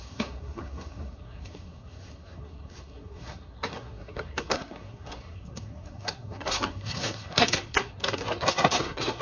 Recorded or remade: remade